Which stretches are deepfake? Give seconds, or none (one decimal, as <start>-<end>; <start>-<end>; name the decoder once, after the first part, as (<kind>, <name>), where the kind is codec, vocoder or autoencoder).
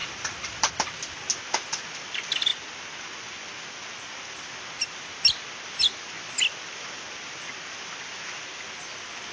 none